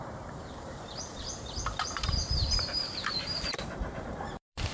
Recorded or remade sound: remade